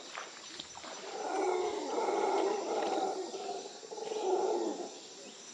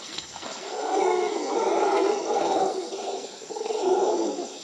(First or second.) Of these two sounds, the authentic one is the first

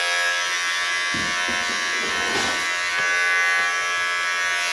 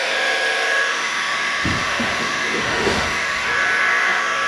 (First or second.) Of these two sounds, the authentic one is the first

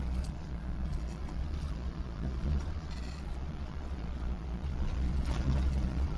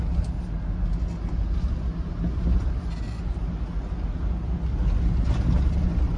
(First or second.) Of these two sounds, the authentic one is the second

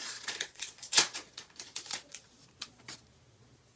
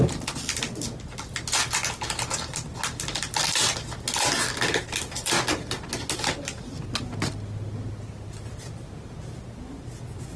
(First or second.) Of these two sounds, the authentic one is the second